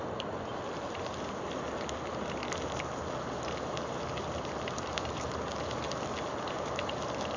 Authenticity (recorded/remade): recorded